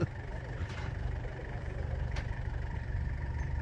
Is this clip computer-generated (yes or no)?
yes